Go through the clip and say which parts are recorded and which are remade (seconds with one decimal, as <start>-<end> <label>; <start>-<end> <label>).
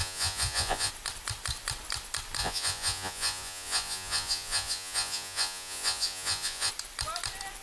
0.0-0.9 remade; 0.9-2.4 recorded; 2.4-6.7 remade; 6.7-7.6 recorded